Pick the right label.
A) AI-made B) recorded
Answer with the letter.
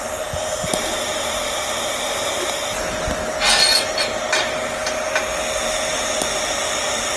B